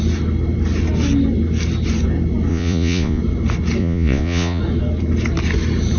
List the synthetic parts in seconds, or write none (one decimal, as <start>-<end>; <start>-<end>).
2.5-3.2; 3.8-4.6